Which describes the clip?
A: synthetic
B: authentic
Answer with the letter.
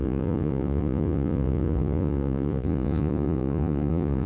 A